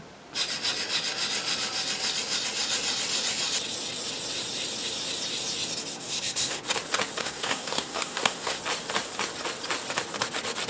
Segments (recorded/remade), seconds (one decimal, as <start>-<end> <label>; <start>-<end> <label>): 0.0-5.9 recorded; 5.9-6.6 remade; 6.6-7.2 recorded; 7.2-8.6 remade; 8.6-10.7 recorded